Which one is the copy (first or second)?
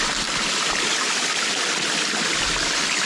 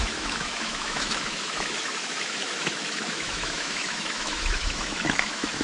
second